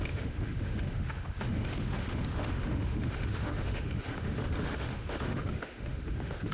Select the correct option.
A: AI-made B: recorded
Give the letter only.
A